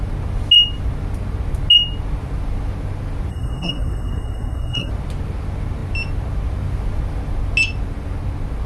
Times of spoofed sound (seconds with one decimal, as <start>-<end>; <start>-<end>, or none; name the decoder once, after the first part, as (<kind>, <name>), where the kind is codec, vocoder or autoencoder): 3.3-4.9 (codec, SNAC)